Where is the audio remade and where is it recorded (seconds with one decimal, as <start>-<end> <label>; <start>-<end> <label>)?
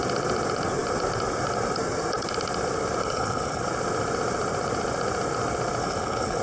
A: 0.0-3.0 recorded; 3.0-3.6 remade; 3.6-5.8 recorded; 5.8-6.4 remade